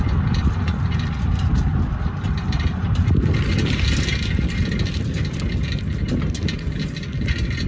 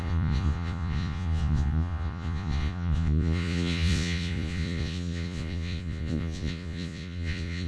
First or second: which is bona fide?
first